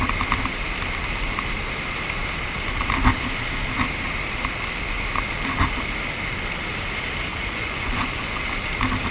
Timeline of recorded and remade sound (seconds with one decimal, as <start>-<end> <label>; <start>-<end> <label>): 0.0-7.3 recorded; 7.3-8.4 remade; 8.4-9.1 recorded